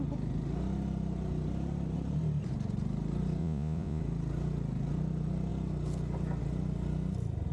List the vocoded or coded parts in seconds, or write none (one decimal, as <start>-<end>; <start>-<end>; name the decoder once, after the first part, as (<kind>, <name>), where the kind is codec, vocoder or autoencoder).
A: 3.4-4.0 (vocoder, Vocos)